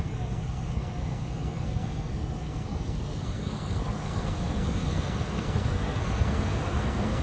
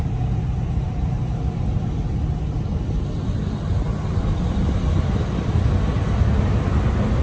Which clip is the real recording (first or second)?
second